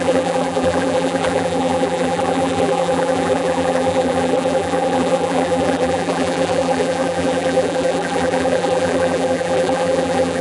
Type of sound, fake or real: fake